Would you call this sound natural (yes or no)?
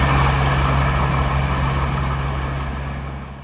yes